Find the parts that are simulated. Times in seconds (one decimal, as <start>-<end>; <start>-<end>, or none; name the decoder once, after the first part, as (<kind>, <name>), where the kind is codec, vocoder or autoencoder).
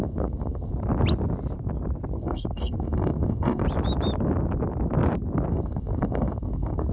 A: 0.0-0.7 (codec, SNAC); 2.1-3.6; 5.5-6.9